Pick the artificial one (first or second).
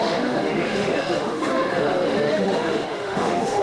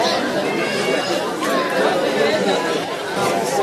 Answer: first